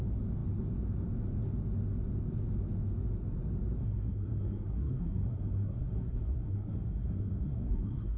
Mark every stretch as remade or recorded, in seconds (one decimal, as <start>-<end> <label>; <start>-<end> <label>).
0.0-3.8 recorded; 3.8-8.2 remade